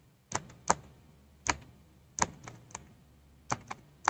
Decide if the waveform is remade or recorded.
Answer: recorded